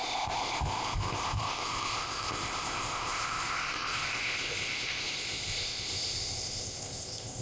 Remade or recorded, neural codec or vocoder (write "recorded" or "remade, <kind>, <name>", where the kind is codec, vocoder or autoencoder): remade, codec, ZipCodec